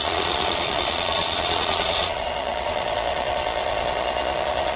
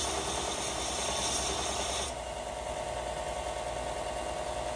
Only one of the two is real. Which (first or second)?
second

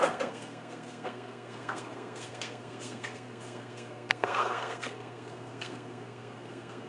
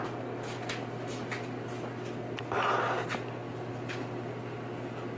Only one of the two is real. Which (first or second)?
second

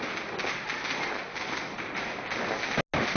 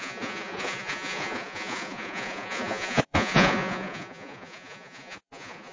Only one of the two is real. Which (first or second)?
first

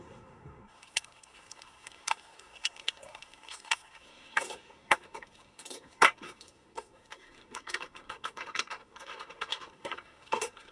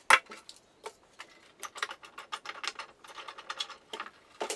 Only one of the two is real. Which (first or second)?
second